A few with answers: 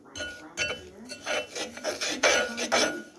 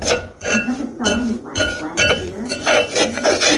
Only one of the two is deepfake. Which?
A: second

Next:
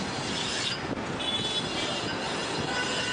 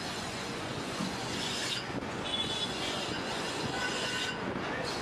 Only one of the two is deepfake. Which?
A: second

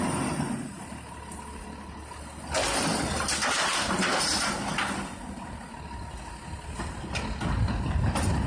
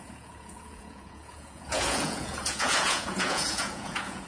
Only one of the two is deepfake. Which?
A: second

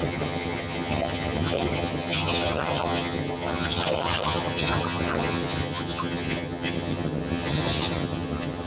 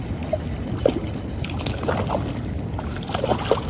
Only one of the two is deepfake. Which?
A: first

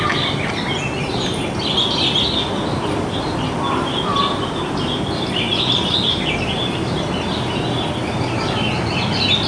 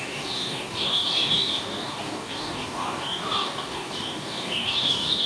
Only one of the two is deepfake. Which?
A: second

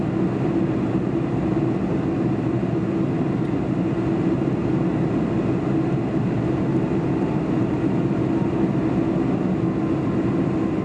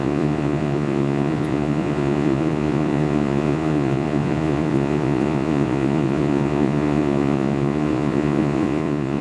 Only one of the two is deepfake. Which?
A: second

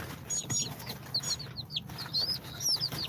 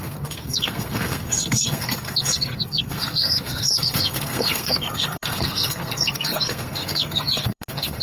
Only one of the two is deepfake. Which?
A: second